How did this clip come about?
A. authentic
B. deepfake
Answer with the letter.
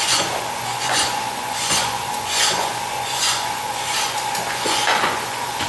B